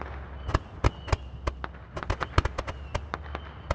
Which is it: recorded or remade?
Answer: recorded